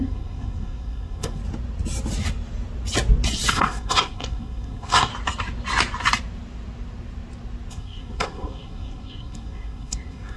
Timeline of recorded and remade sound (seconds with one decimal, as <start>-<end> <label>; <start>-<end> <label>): 0.0-1.4 remade; 1.4-3.5 recorded; 3.5-5.1 remade; 5.1-7.7 recorded; 7.7-10.4 remade